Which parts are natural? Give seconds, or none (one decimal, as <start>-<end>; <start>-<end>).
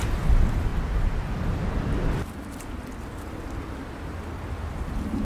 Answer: 0.0-5.2